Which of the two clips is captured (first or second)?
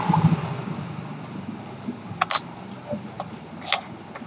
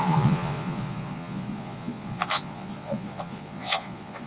first